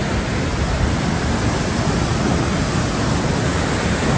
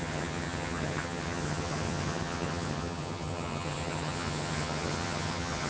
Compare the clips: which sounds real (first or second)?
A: first